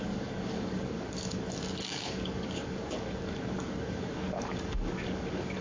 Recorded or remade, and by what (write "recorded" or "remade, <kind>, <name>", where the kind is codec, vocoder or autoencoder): remade, codec, DAC